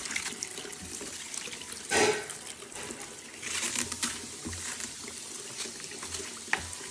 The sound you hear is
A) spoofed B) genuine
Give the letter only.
B